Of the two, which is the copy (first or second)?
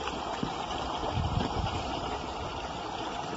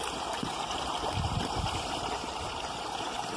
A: second